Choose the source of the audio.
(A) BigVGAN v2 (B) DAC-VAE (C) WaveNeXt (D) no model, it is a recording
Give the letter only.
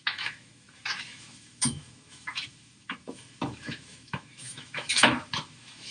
B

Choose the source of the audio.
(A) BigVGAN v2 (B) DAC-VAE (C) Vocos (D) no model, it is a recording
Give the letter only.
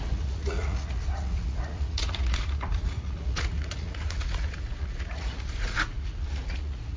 C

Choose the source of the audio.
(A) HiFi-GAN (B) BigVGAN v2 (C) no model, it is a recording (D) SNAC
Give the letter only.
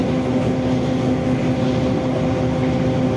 C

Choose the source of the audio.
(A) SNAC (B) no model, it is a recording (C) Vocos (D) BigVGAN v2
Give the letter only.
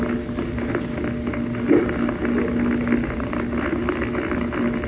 B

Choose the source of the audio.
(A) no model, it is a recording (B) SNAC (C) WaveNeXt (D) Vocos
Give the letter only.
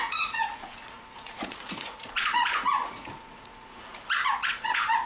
D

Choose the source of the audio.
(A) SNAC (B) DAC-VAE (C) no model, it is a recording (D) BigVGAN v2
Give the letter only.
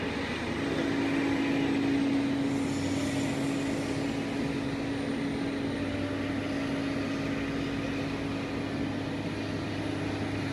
C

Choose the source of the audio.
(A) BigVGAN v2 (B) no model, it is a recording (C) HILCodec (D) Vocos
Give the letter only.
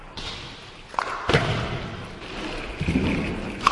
B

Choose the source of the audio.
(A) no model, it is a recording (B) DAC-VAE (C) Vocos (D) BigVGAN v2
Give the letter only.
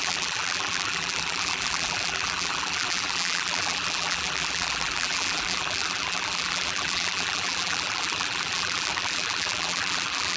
D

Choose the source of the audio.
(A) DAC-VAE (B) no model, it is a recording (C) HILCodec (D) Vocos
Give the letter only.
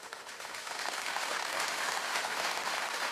A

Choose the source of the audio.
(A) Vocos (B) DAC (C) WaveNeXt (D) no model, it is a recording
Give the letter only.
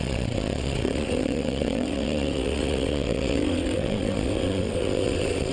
C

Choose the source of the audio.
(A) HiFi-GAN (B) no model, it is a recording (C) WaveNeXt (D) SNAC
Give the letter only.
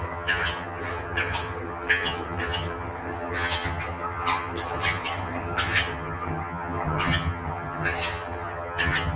A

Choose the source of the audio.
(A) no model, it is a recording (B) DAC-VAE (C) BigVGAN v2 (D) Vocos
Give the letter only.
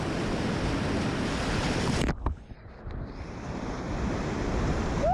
A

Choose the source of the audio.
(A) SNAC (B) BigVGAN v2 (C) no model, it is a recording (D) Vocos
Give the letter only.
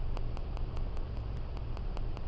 B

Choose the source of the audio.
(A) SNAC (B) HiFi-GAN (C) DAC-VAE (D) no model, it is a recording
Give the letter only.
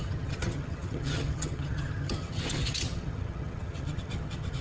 B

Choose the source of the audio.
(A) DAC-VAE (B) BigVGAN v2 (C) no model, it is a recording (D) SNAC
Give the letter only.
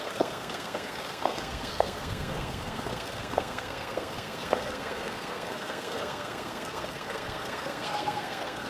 D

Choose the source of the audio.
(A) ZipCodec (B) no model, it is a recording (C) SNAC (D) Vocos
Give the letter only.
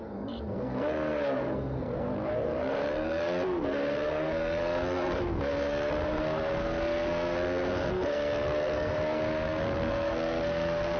C